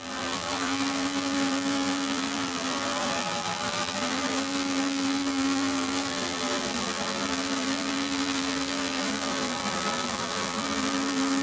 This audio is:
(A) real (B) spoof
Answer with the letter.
B